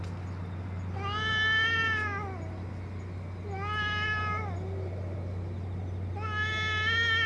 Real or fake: real